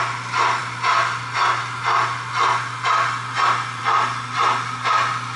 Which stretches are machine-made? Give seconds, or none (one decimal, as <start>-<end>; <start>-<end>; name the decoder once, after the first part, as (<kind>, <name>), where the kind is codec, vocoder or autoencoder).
none